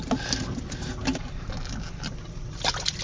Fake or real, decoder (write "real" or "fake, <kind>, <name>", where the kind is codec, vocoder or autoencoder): real